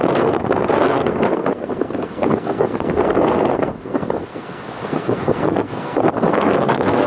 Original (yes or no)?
no